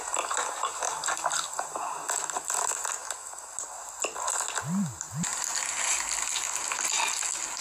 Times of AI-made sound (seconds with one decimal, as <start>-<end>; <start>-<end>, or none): none